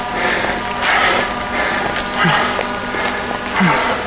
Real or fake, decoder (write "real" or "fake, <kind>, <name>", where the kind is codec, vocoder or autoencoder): real